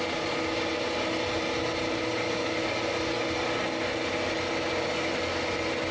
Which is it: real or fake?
real